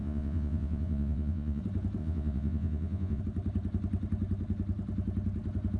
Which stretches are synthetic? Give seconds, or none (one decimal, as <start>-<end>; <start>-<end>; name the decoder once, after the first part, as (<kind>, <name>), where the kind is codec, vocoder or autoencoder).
0.0-1.6 (vocoder, Vocos); 2.0-3.2